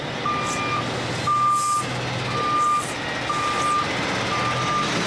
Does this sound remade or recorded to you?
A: recorded